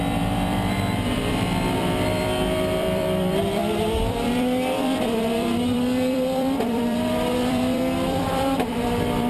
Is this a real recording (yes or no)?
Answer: no